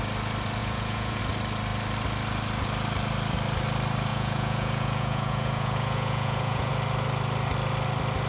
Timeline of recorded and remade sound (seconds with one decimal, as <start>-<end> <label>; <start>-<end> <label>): 0.0-0.6 recorded; 0.6-1.2 remade; 1.2-4.1 recorded; 4.1-6.7 remade; 6.7-8.3 recorded